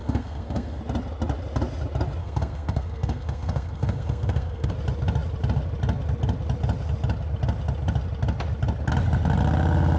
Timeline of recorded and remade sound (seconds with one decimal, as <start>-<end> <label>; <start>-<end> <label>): 0.0-0.8 remade; 0.8-2.2 recorded; 2.2-4.7 remade; 4.7-10.0 recorded